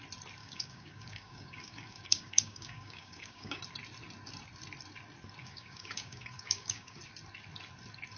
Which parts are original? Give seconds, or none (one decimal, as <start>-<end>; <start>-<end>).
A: 0.0-0.4; 3.6-5.4; 7.0-8.2